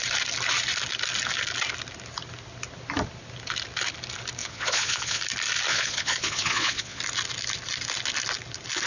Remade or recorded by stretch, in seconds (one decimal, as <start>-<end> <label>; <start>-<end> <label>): 0.0-4.4 recorded; 4.4-5.2 remade; 5.2-5.7 recorded; 5.7-7.0 remade; 7.0-8.9 recorded